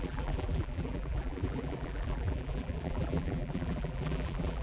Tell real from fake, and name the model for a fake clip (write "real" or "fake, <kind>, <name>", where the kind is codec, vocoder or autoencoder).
fake, vocoder, BigVGAN v2